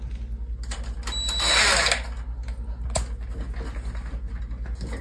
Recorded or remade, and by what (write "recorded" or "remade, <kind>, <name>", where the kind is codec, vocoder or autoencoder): recorded